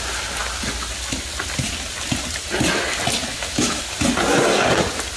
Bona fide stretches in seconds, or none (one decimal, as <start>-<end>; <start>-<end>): 0.0-3.3; 3.8-5.2